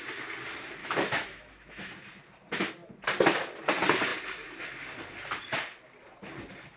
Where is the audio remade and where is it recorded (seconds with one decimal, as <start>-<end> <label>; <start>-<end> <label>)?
0.0-0.8 recorded; 0.8-1.9 remade; 1.9-6.8 recorded